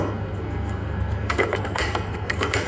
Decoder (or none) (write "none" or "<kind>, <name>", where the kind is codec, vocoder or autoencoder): codec, SNAC